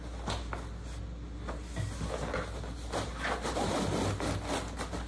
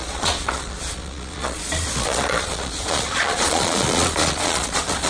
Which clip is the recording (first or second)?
first